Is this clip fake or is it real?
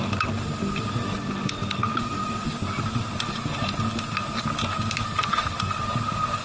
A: real